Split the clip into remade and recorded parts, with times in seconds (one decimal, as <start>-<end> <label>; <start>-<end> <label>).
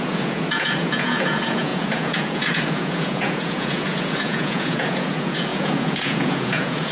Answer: 0.0-6.9 remade